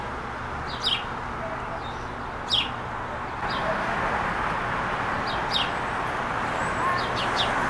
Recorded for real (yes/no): yes